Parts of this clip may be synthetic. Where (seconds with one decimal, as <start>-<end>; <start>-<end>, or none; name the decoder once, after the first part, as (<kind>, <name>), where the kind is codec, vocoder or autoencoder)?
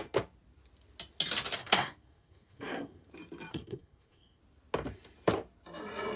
1.6-3.1 (codec, SNAC); 3.5-4.4